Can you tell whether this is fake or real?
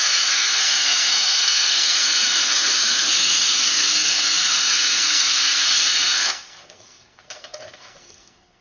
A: fake